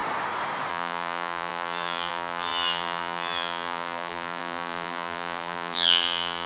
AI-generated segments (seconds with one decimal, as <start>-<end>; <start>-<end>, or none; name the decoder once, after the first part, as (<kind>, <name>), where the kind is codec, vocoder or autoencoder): 0.7-6.5 (vocoder, BigVGAN v2)